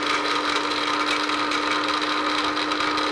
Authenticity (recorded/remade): recorded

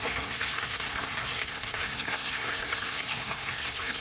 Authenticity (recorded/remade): remade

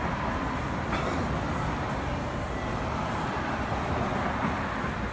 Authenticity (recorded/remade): recorded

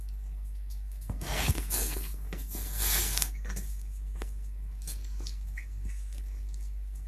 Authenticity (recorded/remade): remade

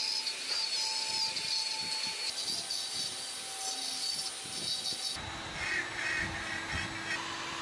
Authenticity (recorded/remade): recorded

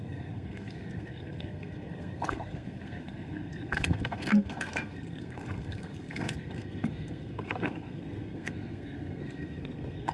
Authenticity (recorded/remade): remade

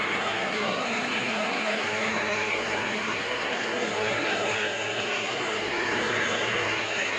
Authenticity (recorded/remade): remade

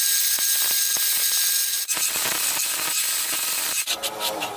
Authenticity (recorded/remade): recorded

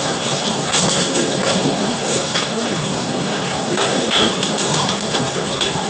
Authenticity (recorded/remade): remade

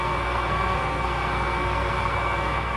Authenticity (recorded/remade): remade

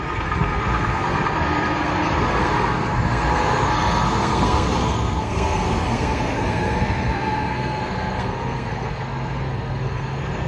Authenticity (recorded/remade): remade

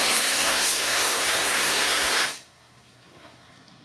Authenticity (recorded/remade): remade